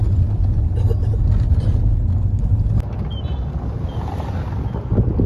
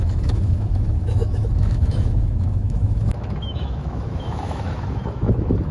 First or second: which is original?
first